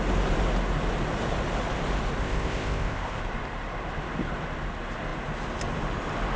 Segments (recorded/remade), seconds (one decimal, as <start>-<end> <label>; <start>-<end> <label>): 0.0-2.2 recorded; 2.2-3.2 remade; 3.2-6.4 recorded